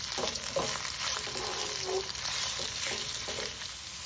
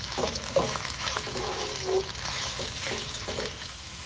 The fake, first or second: second